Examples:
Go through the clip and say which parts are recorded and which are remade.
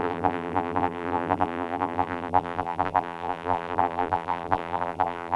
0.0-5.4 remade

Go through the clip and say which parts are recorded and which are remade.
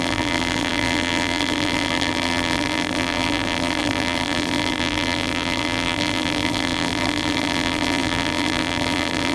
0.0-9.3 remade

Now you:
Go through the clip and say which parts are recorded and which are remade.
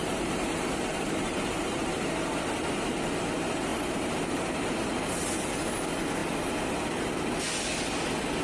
0.0-2.9 remade; 2.9-3.7 recorded; 3.7-5.3 remade; 5.3-8.4 recorded